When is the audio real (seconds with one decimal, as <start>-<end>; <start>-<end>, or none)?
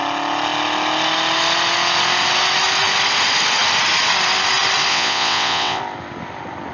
0.0-4.9; 5.8-6.7